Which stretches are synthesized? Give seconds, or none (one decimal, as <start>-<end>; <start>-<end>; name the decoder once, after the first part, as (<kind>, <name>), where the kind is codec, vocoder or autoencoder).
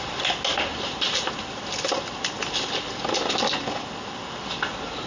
0.7-1.3 (vocoder, BigVGAN v2)